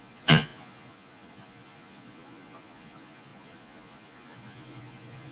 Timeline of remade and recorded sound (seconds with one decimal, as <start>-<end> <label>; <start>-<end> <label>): 0.0-5.3 remade

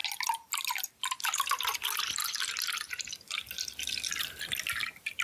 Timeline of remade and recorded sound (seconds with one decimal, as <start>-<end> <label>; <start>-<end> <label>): 0.0-5.2 recorded